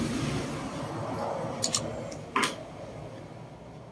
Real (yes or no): yes